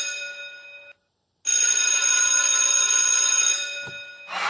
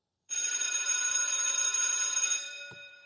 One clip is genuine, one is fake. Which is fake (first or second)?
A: second